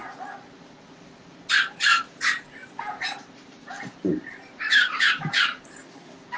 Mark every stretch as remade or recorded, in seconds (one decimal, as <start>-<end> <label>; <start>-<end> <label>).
0.0-1.9 recorded; 1.9-5.7 remade; 5.7-6.4 recorded